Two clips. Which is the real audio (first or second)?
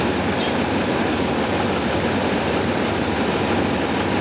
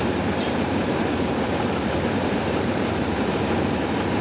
first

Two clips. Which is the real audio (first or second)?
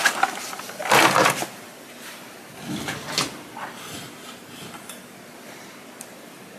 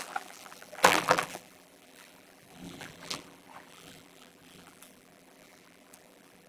first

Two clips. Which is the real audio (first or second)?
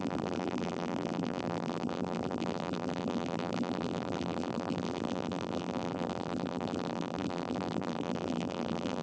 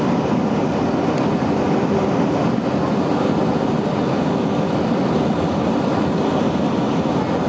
second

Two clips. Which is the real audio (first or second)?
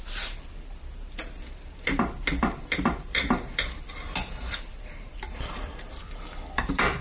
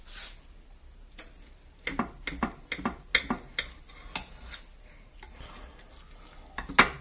second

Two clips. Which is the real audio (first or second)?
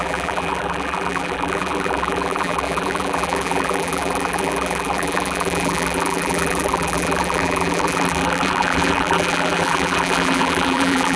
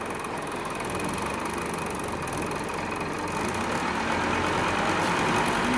second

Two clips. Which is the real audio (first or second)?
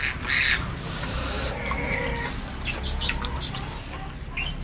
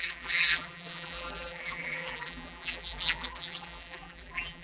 first